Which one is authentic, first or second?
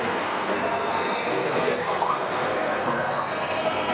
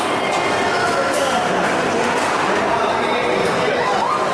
second